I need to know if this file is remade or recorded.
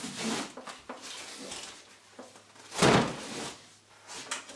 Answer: recorded